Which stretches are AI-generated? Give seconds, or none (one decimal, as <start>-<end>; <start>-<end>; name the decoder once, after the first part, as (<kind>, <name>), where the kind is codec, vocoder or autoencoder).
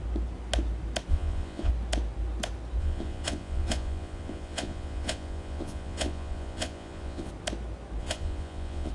1.1-1.7 (vocoder, Vocos); 2.8-7.3; 8.0-8.9